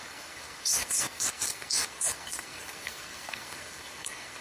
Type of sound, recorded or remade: remade